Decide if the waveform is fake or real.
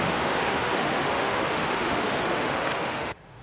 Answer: fake